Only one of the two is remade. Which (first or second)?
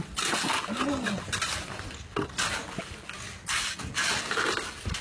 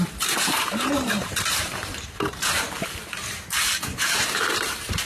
second